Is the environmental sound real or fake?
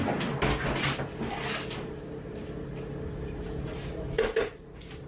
real